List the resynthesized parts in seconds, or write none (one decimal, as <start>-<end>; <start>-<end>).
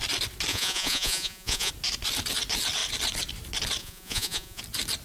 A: 0.5-1.7; 3.8-4.6